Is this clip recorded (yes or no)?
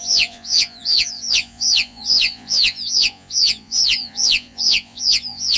no